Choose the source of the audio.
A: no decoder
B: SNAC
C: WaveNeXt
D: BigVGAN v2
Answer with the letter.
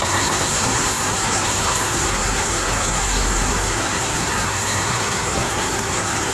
B